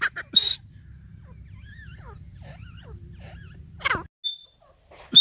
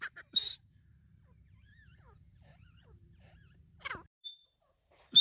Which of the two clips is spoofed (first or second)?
second